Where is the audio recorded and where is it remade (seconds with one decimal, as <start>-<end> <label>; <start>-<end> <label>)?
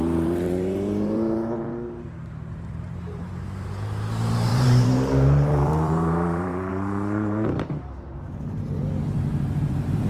0.0-10.1 remade